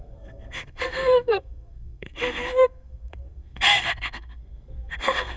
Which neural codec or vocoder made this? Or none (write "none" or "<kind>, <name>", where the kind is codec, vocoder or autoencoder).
codec, SNAC